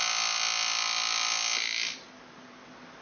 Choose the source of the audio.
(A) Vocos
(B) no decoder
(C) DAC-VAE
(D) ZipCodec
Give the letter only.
B